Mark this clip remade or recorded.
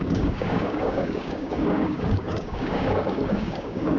remade